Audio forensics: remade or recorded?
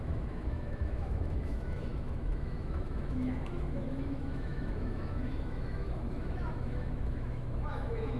remade